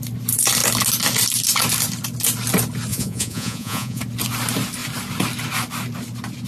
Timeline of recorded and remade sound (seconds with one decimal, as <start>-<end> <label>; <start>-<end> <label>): 0.0-2.9 recorded; 2.9-4.0 remade; 4.0-6.5 recorded